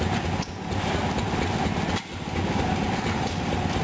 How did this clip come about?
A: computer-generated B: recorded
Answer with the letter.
B